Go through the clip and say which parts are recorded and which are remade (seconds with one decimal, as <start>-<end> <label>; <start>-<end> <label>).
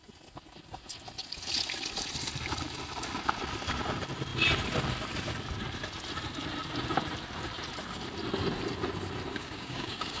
0.0-9.3 recorded; 9.3-10.2 remade